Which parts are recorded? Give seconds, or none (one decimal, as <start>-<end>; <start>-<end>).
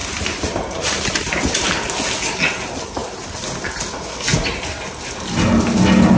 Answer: 1.7-4.3; 4.9-6.2